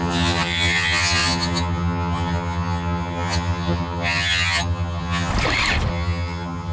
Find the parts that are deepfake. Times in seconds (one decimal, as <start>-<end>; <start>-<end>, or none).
0.0-5.3; 5.9-6.7